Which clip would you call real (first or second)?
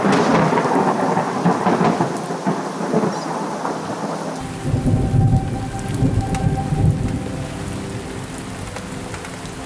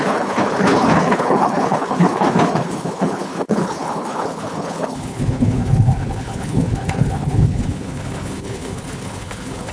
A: first